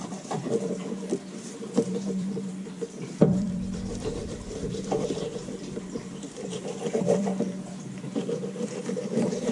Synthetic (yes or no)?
yes